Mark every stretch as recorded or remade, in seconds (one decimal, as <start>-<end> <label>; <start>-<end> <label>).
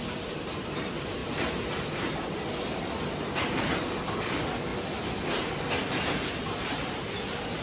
0.0-7.6 recorded